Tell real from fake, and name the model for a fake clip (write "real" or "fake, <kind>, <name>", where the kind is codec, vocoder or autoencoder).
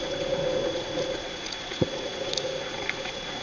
fake, vocoder, Vocos